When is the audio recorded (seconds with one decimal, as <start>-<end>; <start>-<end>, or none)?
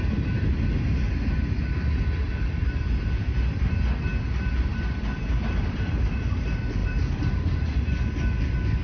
0.0-2.2; 2.8-4.1; 6.1-6.8; 7.6-8.8